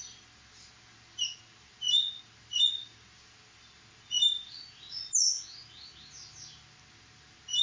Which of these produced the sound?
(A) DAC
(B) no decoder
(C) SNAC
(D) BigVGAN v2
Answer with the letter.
B